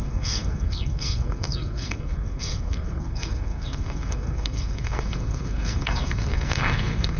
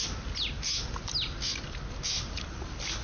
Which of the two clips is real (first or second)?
second